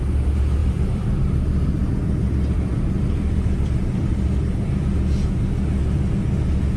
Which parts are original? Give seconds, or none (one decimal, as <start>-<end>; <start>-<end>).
0.0-0.6; 4.1-6.8